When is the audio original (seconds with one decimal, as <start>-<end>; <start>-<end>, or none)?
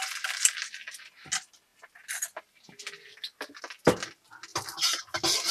0.0-5.5